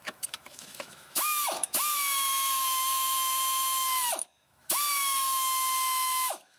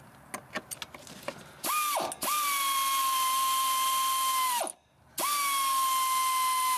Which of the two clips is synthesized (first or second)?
first